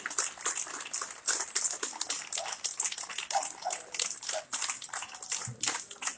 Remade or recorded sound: recorded